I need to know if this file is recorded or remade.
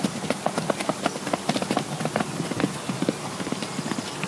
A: recorded